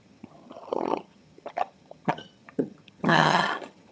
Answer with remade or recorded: remade